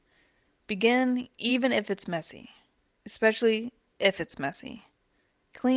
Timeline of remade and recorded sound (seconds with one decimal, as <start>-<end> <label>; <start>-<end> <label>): 0.0-5.8 recorded